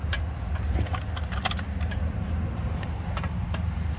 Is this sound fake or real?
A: real